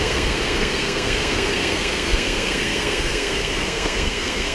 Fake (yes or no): yes